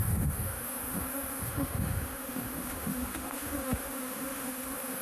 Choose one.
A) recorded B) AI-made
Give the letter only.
B